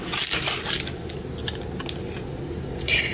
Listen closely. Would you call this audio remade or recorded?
recorded